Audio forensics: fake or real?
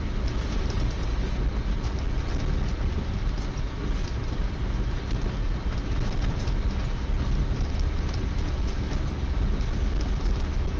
real